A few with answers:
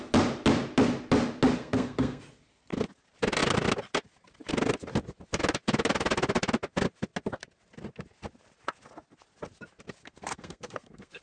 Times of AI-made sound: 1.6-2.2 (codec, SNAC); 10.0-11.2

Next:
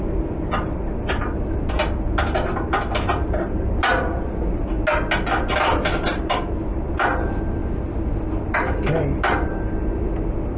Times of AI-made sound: none

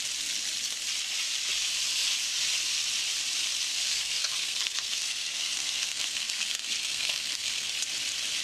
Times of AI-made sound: 3.7-7.7 (codec, SNAC)

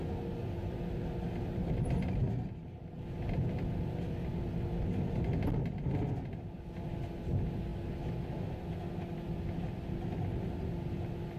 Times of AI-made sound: none

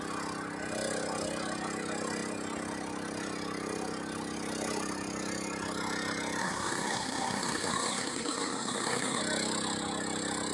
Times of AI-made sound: 6.4-9.2 (codec, SNAC)